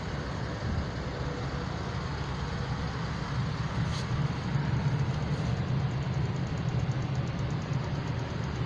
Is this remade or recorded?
recorded